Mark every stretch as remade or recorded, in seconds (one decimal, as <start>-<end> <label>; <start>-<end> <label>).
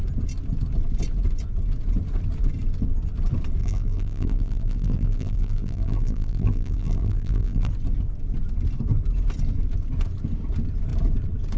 0.0-3.6 recorded; 3.6-7.7 remade; 7.7-11.6 recorded